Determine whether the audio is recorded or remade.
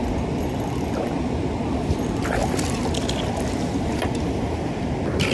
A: recorded